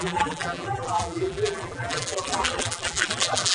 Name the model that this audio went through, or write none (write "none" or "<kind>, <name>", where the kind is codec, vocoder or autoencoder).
vocoder, BigVGAN v2